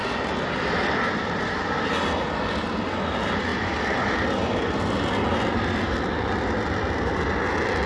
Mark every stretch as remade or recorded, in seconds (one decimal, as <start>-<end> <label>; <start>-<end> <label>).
0.0-7.9 recorded